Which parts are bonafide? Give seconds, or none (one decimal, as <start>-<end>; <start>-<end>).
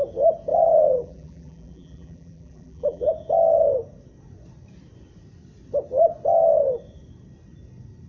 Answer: 0.0-0.5; 3.1-8.1